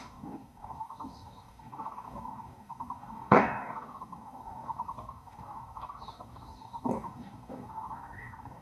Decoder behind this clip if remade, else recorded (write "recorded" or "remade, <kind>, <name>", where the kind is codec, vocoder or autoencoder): remade, codec, DAC